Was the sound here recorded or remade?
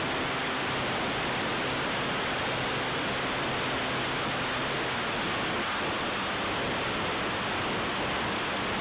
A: recorded